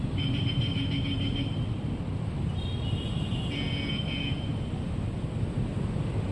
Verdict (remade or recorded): recorded